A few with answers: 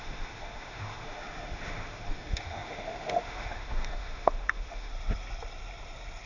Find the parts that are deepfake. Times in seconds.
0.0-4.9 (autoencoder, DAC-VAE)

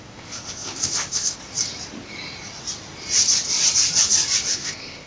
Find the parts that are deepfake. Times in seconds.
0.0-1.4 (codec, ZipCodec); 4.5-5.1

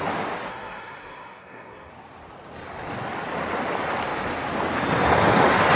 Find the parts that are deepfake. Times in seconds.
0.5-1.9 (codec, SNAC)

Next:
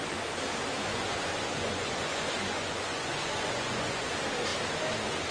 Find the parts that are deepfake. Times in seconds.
0.9-4.1 (vocoder, Vocos)

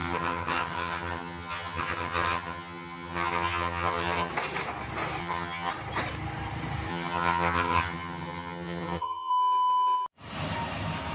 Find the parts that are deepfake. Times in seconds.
0.0-4.3 (vocoder, HiFi-GAN); 5.2-5.7; 6.9-9.3